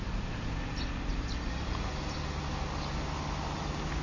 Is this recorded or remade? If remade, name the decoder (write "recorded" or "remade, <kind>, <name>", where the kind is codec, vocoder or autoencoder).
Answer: recorded